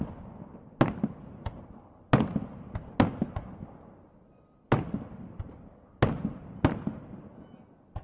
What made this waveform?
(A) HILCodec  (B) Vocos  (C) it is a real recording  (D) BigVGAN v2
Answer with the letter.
C